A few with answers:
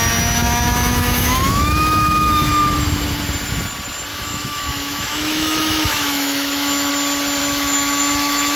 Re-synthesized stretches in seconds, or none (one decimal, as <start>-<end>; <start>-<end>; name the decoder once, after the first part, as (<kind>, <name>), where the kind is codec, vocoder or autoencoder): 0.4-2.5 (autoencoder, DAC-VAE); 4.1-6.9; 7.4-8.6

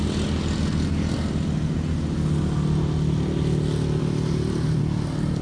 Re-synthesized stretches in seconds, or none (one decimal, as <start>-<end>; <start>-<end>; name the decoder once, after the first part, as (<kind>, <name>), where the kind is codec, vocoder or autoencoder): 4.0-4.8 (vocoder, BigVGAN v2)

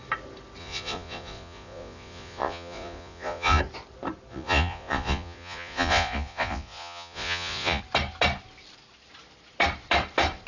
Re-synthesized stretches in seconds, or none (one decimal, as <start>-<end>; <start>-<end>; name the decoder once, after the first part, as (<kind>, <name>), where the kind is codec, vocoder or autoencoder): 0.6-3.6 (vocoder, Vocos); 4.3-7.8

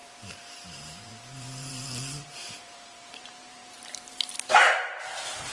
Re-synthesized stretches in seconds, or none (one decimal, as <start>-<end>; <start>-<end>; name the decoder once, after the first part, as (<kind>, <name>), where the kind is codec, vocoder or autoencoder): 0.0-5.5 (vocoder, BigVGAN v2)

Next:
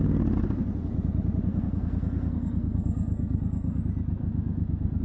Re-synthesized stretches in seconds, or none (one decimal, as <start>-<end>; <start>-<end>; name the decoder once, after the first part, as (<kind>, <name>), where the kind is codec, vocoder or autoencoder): 1.5-3.8 (codec, SNAC); 4.2-5.0

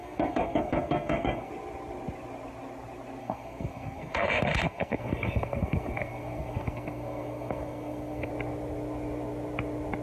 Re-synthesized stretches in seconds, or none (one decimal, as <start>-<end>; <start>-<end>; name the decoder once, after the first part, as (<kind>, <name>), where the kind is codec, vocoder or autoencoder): 0.0-1.5 (codec, SNAC); 3.2-8.3

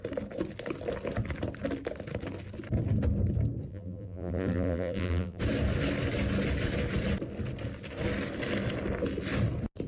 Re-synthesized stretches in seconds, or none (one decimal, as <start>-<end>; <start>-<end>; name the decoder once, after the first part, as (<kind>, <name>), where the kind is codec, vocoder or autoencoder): 3.7-5.4 (vocoder, BigVGAN v2)